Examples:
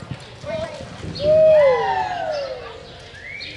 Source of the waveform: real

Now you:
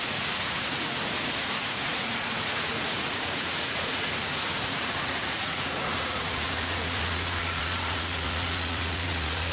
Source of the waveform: fake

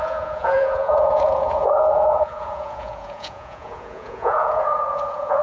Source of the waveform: fake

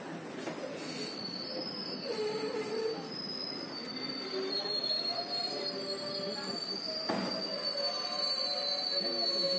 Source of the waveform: real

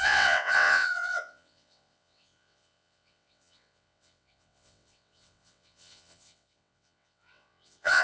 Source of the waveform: fake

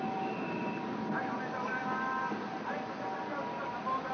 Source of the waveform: real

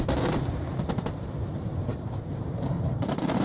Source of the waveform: fake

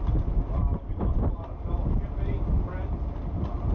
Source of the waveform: real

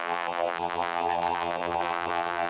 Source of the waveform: fake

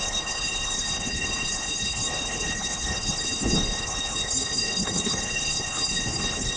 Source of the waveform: fake